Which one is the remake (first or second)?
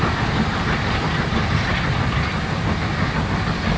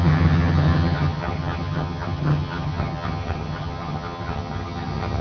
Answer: second